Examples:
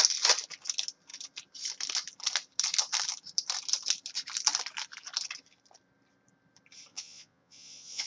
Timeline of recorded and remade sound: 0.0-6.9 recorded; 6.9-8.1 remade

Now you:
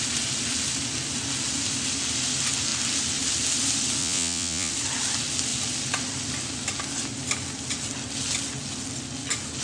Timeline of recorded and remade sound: 0.0-4.0 recorded; 4.0-4.7 remade; 4.7-9.6 recorded

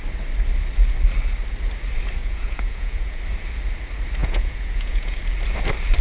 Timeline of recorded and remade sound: 0.0-2.2 recorded; 2.2-3.2 remade; 3.2-4.2 recorded; 4.2-5.2 remade; 5.2-6.0 recorded

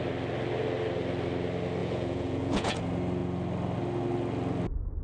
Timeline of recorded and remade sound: 0.0-1.8 recorded; 1.8-2.8 remade; 2.8-5.0 recorded

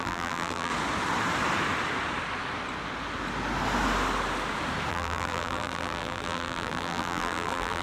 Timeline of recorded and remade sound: 0.0-0.7 remade; 0.7-4.9 recorded; 4.9-7.8 remade